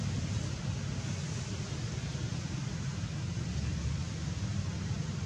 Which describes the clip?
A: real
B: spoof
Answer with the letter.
A